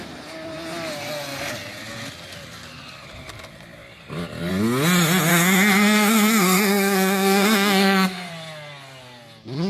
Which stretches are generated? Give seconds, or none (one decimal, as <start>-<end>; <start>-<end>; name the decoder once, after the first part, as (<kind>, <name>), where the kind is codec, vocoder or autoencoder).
5.3-8.3 (codec, SNAC)